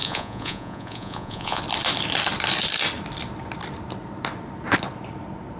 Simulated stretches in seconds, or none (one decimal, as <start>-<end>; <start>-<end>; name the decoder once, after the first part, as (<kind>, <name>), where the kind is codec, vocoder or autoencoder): 0.0-1.6 (vocoder, Vocos)